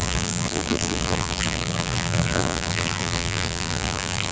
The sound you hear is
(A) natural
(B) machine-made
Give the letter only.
B